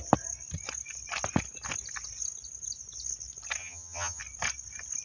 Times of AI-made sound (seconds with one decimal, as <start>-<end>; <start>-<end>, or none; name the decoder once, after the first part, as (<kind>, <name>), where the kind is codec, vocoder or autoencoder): 3.6-4.2 (vocoder, HiFi-GAN)